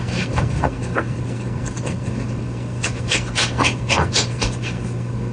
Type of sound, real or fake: fake